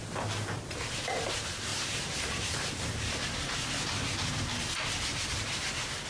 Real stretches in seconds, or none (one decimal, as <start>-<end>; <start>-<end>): 0.0-1.7; 2.7-6.1